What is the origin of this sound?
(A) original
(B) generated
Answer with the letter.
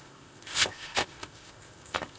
B